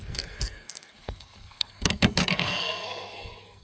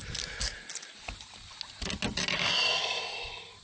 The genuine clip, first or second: second